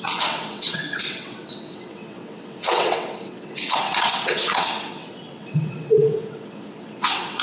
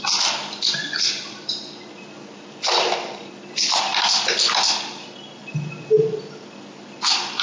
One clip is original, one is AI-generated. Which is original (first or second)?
second